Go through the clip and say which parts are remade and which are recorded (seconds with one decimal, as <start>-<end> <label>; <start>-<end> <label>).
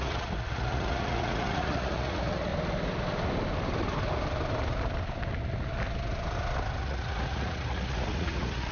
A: 0.0-2.5 remade; 2.5-6.8 recorded; 6.8-8.7 remade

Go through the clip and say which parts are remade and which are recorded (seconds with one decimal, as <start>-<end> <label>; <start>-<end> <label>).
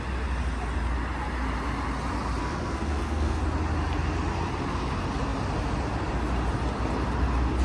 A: 0.0-2.4 recorded; 2.4-3.4 remade; 3.4-7.6 recorded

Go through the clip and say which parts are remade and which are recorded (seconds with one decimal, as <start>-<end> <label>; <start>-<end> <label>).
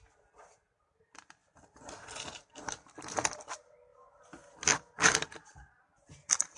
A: 0.0-6.6 recorded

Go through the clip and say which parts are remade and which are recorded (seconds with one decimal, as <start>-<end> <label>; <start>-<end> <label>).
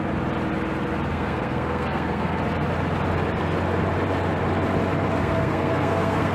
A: 0.0-1.1 recorded; 1.1-2.4 remade; 2.4-5.2 recorded; 5.2-6.3 remade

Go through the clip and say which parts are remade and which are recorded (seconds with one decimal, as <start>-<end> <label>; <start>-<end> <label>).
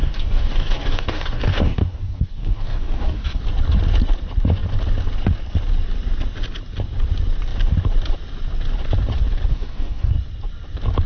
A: 0.0-3.4 remade; 3.4-9.5 recorded; 9.5-10.1 remade; 10.1-11.1 recorded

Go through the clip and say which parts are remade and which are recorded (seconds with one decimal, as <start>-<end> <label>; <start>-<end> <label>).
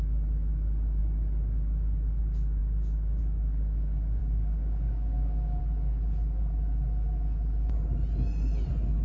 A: 0.0-4.2 recorded; 4.2-5.6 remade; 5.6-9.0 recorded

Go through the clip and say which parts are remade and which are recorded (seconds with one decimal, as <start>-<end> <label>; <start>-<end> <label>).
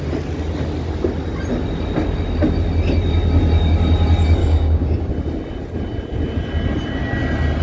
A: 0.0-4.4 recorded; 4.4-5.1 remade; 5.1-7.6 recorded